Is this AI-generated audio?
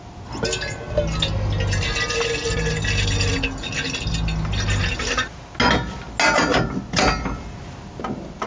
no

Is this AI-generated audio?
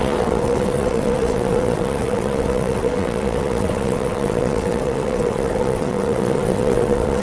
yes